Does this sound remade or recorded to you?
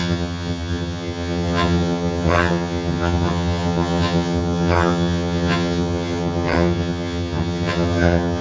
remade